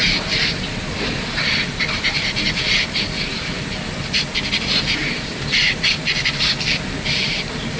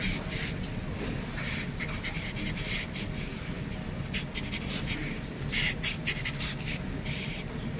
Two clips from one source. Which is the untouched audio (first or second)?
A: second